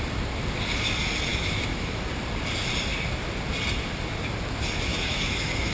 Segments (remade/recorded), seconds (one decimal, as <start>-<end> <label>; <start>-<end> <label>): 0.0-1.3 recorded; 1.3-2.0 remade; 2.0-4.9 recorded; 4.9-5.7 remade